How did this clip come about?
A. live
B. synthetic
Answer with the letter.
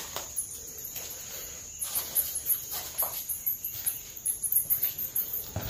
B